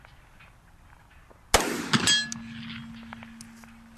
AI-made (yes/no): no